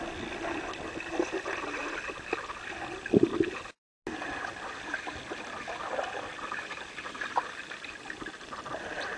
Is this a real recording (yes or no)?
yes